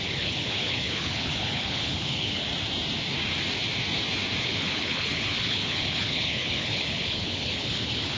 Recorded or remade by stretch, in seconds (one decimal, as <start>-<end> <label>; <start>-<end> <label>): 0.0-2.5 remade; 2.5-4.4 recorded; 4.4-8.2 remade